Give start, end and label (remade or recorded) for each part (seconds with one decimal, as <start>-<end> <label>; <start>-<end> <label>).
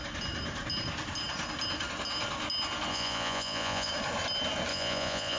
0.0-2.9 recorded; 2.9-3.9 remade; 3.9-4.7 recorded; 4.7-5.4 remade